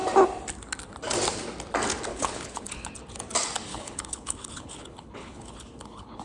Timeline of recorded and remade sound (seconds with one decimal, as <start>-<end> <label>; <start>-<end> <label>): 0.0-2.1 recorded; 2.1-2.9 remade; 2.9-3.7 recorded; 3.7-6.2 remade